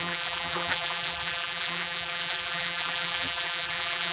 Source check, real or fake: fake